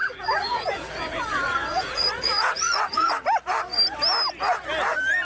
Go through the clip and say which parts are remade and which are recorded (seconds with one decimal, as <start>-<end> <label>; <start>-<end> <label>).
0.0-3.1 remade; 3.1-5.2 recorded